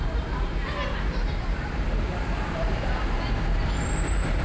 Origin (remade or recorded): recorded